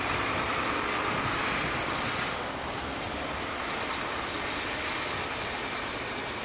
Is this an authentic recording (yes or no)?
yes